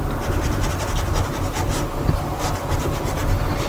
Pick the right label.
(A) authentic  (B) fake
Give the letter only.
A